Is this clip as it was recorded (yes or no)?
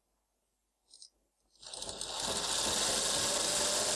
yes